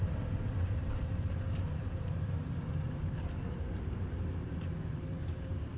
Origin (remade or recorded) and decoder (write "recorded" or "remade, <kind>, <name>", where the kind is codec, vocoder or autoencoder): remade, vocoder, BigVGAN v2